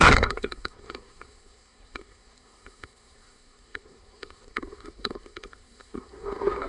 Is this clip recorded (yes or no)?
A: no